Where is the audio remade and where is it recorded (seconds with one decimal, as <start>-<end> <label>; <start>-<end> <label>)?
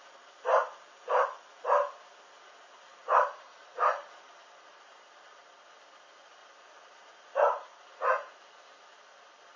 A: 0.0-3.0 recorded; 3.0-5.5 remade; 5.5-6.4 recorded; 6.4-8.0 remade; 8.0-9.6 recorded